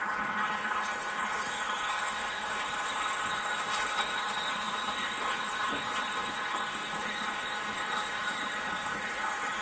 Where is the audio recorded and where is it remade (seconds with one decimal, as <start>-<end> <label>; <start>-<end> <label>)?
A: 0.0-9.6 remade

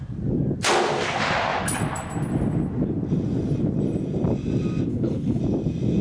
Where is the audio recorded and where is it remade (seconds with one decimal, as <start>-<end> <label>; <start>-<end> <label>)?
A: 0.0-4.9 recorded; 4.9-5.4 remade; 5.4-6.0 recorded

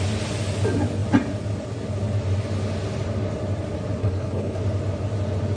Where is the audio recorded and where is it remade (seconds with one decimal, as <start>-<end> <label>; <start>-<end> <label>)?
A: 0.0-4.0 recorded; 4.0-4.6 remade; 4.6-5.6 recorded

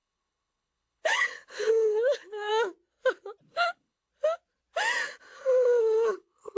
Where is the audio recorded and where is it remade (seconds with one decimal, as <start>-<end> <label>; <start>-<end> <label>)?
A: 0.0-2.5 remade; 2.5-3.5 recorded; 3.5-4.1 remade; 4.1-5.8 recorded; 5.8-6.6 remade

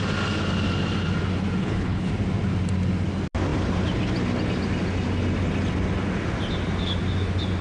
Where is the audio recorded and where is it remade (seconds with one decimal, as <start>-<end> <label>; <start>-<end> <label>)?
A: 0.0-1.6 recorded; 1.6-2.1 remade; 2.1-7.6 recorded